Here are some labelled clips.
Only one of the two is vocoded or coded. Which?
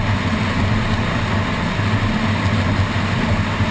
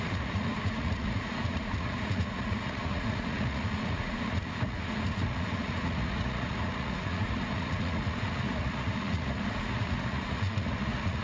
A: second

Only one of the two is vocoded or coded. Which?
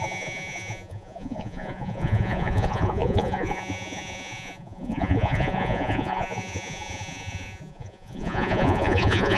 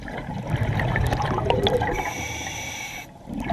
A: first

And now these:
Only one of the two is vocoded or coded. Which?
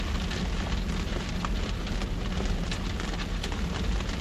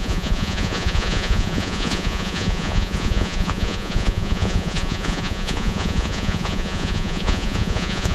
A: second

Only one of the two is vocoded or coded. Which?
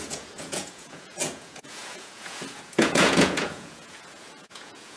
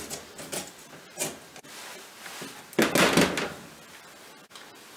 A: first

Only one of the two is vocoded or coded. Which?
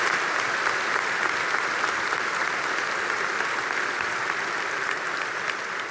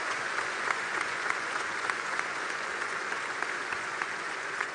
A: second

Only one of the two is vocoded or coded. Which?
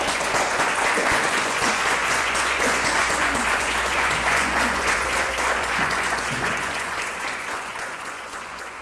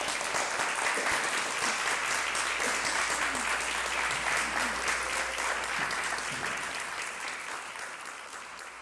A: first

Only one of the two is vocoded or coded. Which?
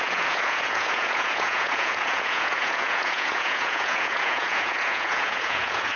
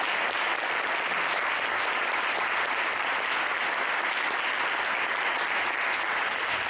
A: first